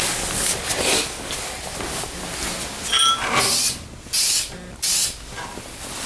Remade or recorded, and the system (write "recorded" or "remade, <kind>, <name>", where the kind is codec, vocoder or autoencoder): recorded